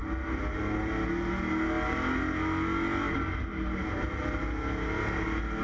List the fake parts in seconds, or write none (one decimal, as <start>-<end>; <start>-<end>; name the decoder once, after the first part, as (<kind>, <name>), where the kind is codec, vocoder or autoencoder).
none